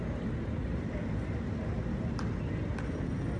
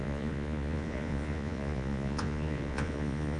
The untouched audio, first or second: first